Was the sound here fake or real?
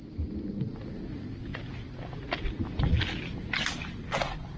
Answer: real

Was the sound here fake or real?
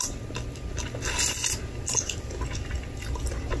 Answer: real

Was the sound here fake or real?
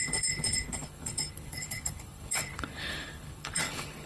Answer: fake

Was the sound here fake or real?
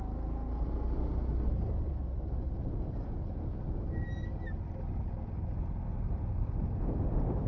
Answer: real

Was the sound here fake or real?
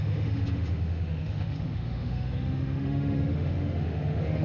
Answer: fake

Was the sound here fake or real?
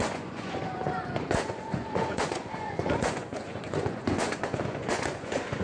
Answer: fake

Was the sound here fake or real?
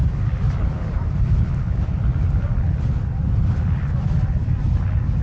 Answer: real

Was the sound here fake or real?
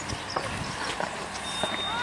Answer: real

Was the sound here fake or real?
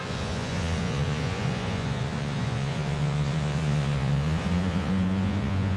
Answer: fake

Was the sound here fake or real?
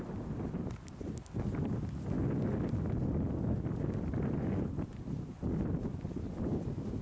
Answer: real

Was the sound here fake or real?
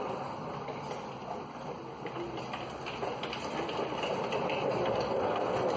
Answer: real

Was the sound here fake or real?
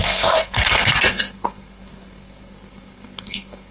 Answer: fake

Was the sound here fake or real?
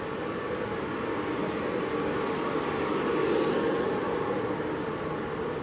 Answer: fake